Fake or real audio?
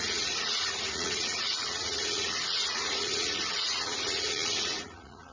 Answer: fake